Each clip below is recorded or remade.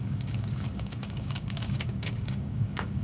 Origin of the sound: remade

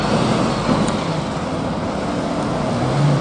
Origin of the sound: recorded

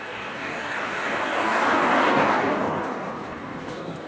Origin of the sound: remade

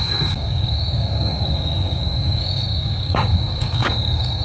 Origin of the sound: remade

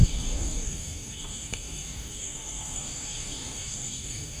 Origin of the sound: remade